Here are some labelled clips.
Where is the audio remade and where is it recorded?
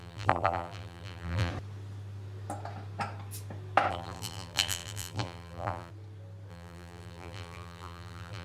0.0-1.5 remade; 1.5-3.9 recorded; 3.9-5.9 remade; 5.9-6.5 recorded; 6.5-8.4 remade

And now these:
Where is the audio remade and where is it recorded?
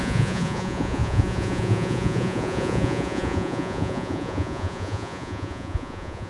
0.0-6.3 remade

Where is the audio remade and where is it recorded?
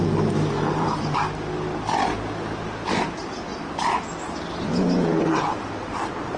0.0-6.4 recorded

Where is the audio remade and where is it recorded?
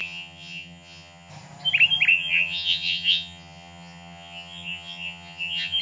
0.0-1.3 remade; 1.3-2.1 recorded; 2.1-5.8 remade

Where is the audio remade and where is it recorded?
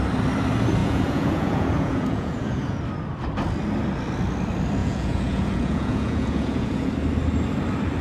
0.0-0.8 recorded; 0.8-2.8 remade; 2.8-4.8 recorded; 4.8-6.9 remade; 6.9-8.0 recorded